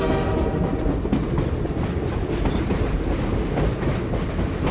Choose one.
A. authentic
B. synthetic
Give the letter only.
A